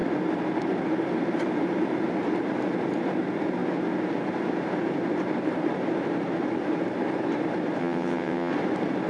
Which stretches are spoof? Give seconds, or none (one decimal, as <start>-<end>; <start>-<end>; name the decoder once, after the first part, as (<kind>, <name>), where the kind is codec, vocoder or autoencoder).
7.8-8.5 (vocoder, WaveNeXt)